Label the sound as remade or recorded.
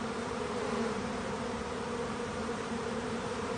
remade